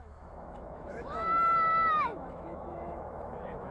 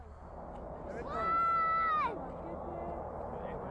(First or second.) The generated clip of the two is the first